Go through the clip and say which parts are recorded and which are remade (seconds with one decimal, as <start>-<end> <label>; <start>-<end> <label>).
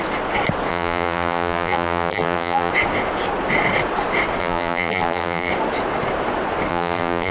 0.0-0.7 recorded; 0.7-2.7 remade; 2.7-4.4 recorded; 4.4-5.5 remade; 5.5-6.7 recorded; 6.7-7.3 remade